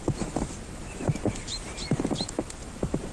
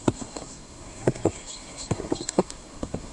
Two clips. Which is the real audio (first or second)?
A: first